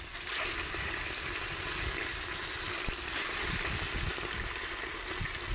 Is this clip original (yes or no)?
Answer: yes